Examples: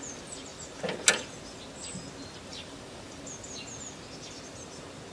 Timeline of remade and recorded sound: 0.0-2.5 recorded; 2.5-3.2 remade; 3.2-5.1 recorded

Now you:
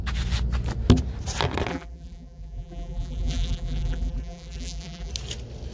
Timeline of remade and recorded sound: 0.0-1.7 recorded; 1.7-5.1 remade; 5.1-5.7 recorded

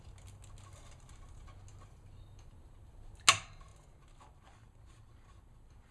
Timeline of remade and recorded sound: 0.0-5.9 recorded

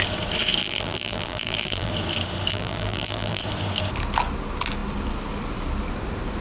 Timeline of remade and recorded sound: 0.0-0.6 recorded; 0.6-1.9 remade; 1.9-2.5 recorded; 2.5-3.4 remade; 3.4-6.4 recorded

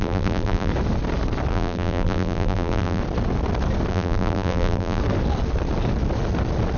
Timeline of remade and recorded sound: 0.0-0.7 remade; 0.7-1.5 recorded; 1.5-3.0 remade; 3.0-3.9 recorded; 3.9-5.0 remade; 5.0-6.8 recorded

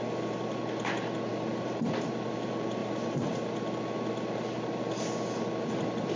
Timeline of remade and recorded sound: 0.0-1.3 recorded; 1.3-2.3 remade; 2.3-2.8 recorded; 2.8-3.3 remade; 3.3-6.2 recorded